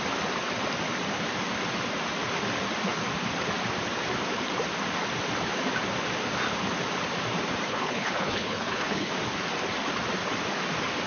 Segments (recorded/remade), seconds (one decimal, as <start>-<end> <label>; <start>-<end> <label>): 0.0-7.7 recorded; 7.7-9.1 remade; 9.1-11.1 recorded